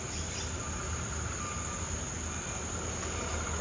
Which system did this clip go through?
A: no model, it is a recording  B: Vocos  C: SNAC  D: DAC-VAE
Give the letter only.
A